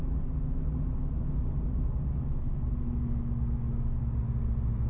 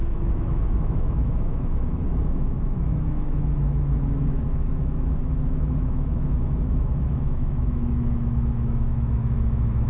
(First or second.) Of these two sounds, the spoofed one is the second